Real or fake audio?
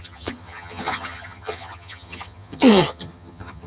fake